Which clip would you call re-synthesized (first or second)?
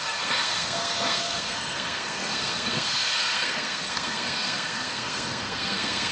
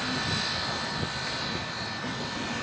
first